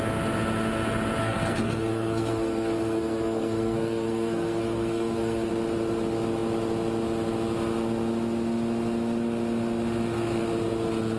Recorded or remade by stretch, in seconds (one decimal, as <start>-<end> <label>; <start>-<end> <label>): 0.0-1.2 recorded; 1.2-5.5 remade; 5.5-11.2 recorded